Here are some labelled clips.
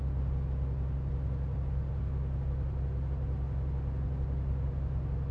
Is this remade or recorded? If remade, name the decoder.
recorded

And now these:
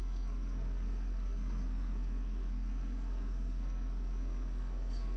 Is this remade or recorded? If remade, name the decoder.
remade, codec, SNAC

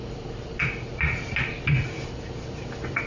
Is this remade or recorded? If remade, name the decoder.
recorded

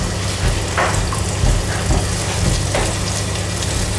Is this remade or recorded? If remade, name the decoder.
recorded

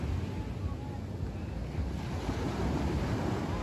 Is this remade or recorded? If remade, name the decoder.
recorded